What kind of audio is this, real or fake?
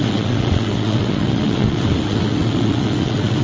fake